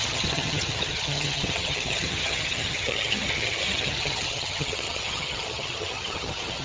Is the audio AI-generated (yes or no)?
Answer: yes